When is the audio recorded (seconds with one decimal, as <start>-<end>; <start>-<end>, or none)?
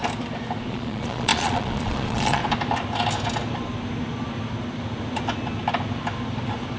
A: 0.0-0.7; 2.4-6.8